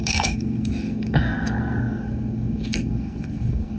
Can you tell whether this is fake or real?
fake